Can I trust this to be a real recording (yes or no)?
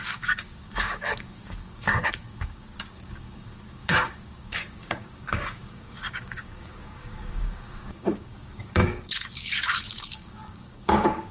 no